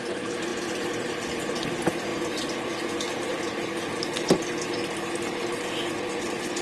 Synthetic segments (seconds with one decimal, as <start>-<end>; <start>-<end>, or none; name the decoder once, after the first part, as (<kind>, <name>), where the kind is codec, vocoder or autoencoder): 2.1-4.6 (vocoder, BigVGAN v2)